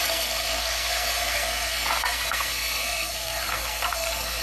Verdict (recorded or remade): remade